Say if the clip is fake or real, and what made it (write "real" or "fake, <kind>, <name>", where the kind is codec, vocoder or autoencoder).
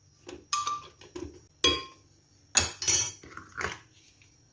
real